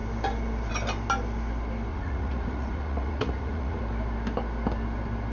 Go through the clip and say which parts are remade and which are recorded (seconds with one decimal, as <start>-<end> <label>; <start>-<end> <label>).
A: 0.0-1.9 recorded; 1.9-3.8 remade; 3.8-5.3 recorded